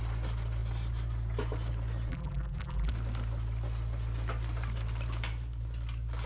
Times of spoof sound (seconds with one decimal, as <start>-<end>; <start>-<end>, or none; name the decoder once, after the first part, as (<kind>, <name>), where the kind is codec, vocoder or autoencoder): 2.1-2.9 (vocoder, BigVGAN v2)